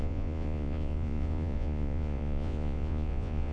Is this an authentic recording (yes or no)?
no